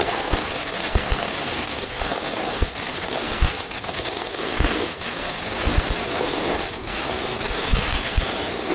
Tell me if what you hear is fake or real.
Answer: fake